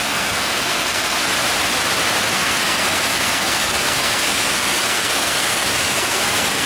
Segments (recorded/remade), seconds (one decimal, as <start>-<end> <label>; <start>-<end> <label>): 0.0-1.3 remade; 1.3-2.3 recorded; 2.3-6.7 remade